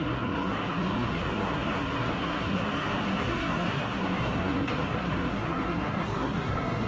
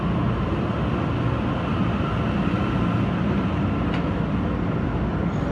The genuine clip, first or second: second